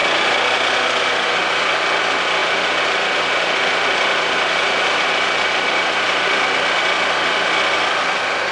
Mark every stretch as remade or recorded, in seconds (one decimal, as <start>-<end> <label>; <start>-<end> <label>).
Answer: 0.0-2.4 recorded; 2.4-6.5 remade; 6.5-8.5 recorded